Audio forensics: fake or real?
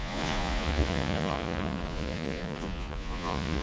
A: fake